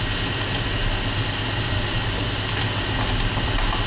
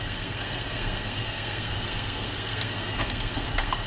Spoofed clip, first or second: second